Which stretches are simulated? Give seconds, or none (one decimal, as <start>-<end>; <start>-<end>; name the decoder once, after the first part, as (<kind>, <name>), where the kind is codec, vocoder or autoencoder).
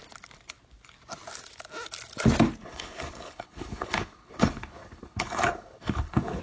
2.6-6.4 (codec, HILCodec)